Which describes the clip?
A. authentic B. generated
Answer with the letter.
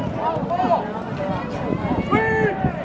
A